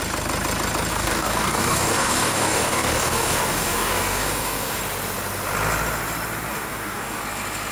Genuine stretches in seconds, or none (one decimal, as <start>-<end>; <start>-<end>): 0.0-0.9; 4.8-6.5; 7.2-7.7